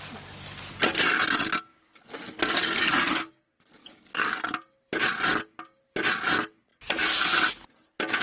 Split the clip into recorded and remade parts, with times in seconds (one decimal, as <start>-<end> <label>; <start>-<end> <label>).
0.0-1.7 recorded; 1.7-3.3 remade; 3.3-3.8 recorded; 3.8-4.3 remade; 4.3-8.2 recorded